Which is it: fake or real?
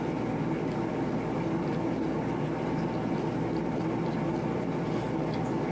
real